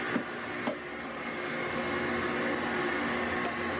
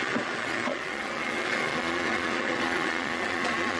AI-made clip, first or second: second